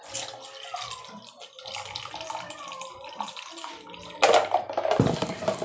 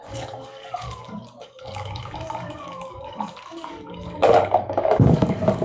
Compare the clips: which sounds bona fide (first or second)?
first